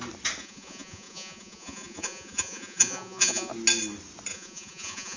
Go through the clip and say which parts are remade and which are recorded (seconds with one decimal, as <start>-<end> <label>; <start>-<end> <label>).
0.0-0.4 recorded; 0.4-3.5 remade; 3.5-4.3 recorded; 4.3-5.2 remade

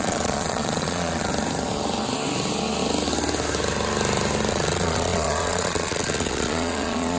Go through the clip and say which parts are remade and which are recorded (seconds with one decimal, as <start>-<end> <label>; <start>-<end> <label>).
0.0-1.3 remade; 1.3-4.5 recorded; 4.5-7.2 remade

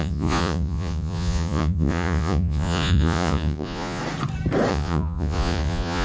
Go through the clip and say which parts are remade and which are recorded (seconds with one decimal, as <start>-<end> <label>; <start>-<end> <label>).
0.0-4.0 remade; 4.0-4.7 recorded; 4.7-6.0 remade

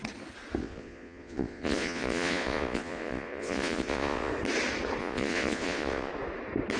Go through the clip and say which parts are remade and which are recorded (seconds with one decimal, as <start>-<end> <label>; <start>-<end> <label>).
0.0-0.6 recorded; 0.6-4.3 remade; 4.3-5.0 recorded; 5.0-6.1 remade; 6.1-6.8 recorded

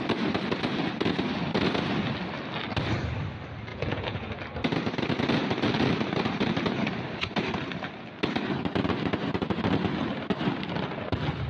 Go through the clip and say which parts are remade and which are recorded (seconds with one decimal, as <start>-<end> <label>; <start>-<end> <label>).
0.0-3.7 recorded; 3.7-4.3 remade; 4.3-11.5 recorded

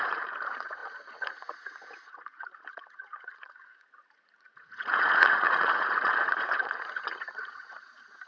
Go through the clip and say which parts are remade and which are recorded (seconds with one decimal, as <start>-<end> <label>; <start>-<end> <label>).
0.0-8.3 remade

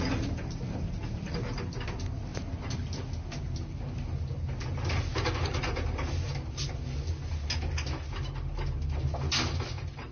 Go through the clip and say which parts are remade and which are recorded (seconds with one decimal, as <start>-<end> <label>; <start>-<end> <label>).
0.0-10.1 recorded

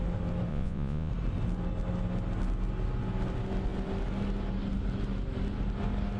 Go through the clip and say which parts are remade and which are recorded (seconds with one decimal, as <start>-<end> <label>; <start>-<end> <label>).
0.0-0.5 recorded; 0.5-1.1 remade; 1.1-6.2 recorded